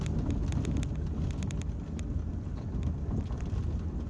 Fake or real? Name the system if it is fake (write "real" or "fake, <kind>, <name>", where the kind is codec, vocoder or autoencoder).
real